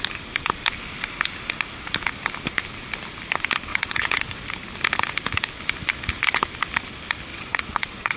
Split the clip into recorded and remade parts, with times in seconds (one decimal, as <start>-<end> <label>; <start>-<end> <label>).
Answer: 0.0-3.7 recorded; 3.7-4.4 remade; 4.4-7.3 recorded; 7.3-8.2 remade